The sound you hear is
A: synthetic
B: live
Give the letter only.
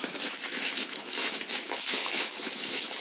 A